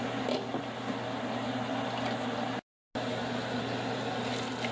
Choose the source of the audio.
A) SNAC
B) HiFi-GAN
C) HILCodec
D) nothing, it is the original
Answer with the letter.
D